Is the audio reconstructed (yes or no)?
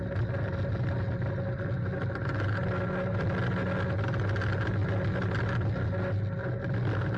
no